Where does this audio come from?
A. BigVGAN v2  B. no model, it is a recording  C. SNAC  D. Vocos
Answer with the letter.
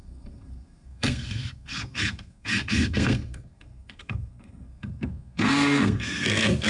C